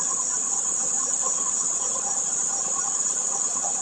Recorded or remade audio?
remade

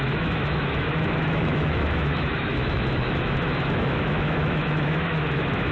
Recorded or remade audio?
remade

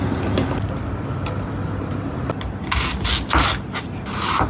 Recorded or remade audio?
recorded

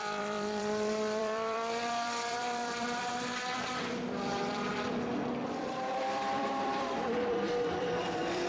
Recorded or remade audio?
remade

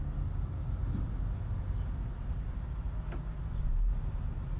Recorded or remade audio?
recorded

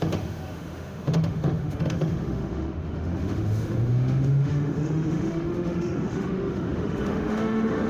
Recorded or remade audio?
remade